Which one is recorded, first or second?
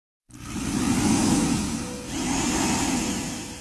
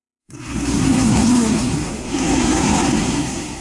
first